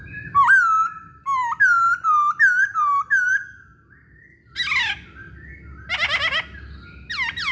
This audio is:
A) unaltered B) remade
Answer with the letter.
A